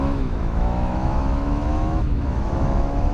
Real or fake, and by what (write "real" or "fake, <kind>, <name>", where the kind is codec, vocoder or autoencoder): fake, autoencoder, DAC-VAE